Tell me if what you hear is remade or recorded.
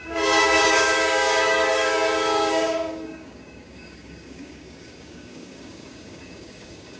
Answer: remade